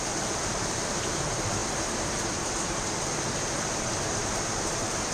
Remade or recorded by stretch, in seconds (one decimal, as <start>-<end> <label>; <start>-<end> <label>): 0.0-5.1 remade